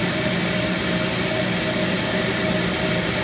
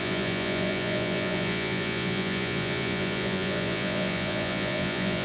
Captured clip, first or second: first